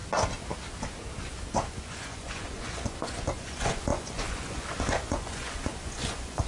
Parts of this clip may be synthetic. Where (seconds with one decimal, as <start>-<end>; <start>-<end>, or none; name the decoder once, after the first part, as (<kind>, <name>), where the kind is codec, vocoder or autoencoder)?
1.7-6.5 (vocoder, Vocos)